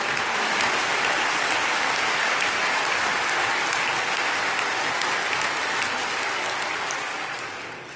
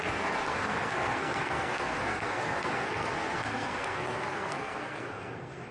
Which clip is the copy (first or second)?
second